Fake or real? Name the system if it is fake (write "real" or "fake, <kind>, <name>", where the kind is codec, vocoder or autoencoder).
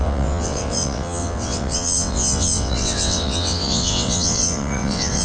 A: fake, vocoder, WaveNeXt